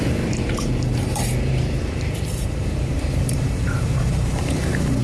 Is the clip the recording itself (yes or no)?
no